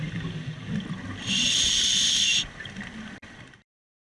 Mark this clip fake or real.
real